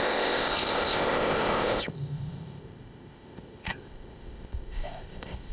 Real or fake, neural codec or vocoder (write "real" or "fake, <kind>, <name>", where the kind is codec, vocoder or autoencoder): fake, codec, ZipCodec